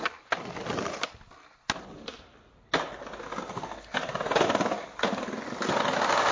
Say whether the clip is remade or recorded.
recorded